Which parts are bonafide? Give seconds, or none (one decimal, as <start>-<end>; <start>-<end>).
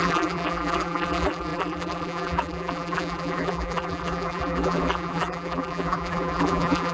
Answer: none